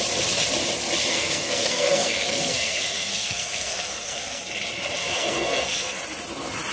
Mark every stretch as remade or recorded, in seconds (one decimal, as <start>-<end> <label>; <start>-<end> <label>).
0.0-1.1 recorded; 1.1-4.4 remade; 4.4-5.0 recorded; 5.0-6.0 remade; 6.0-6.7 recorded